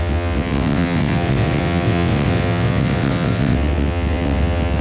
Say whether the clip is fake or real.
fake